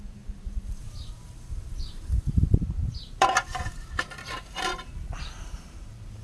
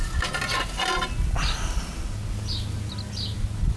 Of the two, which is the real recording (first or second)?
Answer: second